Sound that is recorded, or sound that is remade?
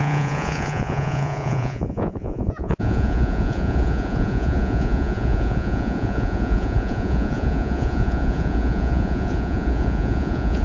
remade